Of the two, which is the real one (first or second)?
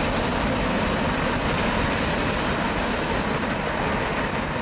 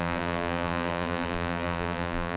first